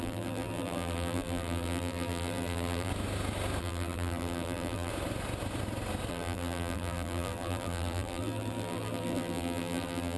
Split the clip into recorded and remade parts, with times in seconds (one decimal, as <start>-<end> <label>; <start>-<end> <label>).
0.0-2.9 remade; 2.9-3.6 recorded; 3.6-4.9 remade; 4.9-6.1 recorded; 6.1-10.2 remade